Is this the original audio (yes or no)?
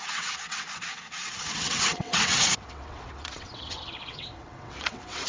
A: no